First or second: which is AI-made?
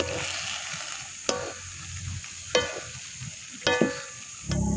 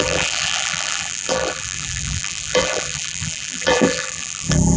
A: second